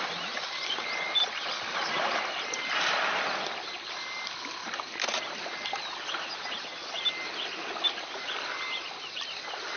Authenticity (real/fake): real